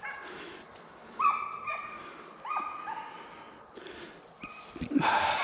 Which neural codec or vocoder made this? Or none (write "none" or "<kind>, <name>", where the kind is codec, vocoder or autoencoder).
none